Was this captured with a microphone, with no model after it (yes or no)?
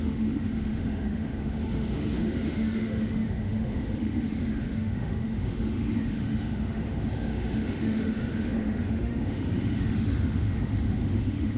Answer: no